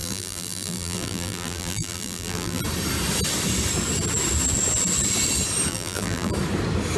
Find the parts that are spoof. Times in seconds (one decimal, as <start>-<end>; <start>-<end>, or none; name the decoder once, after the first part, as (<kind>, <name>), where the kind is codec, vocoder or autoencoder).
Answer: 0.0-2.6 (vocoder, BigVGAN v2); 5.7-6.3